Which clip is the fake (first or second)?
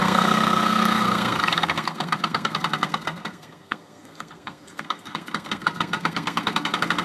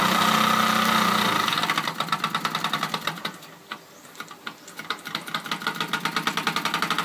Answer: first